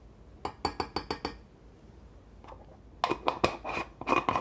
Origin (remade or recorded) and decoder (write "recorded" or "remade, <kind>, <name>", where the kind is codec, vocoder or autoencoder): recorded